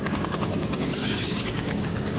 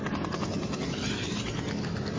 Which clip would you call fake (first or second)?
first